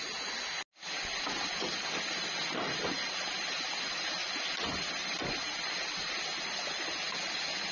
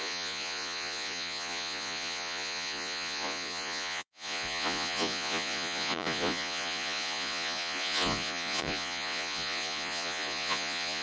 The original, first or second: first